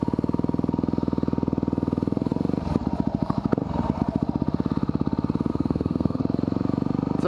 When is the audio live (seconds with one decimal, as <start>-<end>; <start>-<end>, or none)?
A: 0.0-5.5; 6.2-7.3